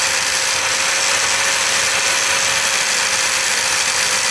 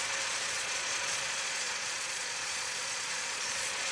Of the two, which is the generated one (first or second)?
second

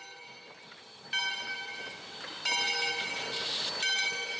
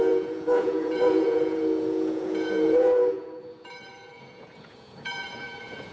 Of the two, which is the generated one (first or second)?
second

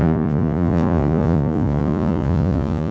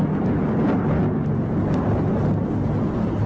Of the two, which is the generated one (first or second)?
first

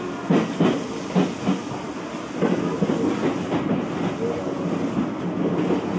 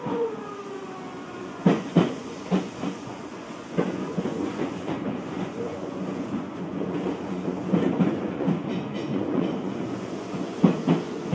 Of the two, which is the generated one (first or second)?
second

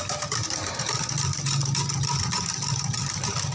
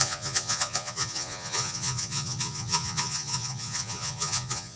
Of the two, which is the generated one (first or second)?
second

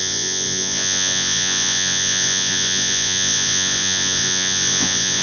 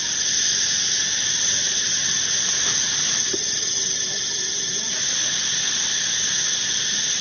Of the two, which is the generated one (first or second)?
first